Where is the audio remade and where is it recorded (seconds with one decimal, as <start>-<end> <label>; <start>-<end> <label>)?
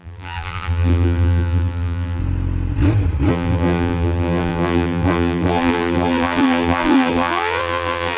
0.0-2.2 remade; 2.2-3.3 recorded; 3.3-8.2 remade